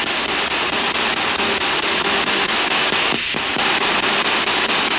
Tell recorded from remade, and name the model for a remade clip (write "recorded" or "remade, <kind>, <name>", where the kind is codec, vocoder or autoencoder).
recorded